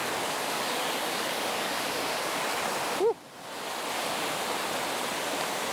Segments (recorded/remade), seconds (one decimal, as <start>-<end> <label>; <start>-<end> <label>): 0.0-2.6 remade; 2.6-5.7 recorded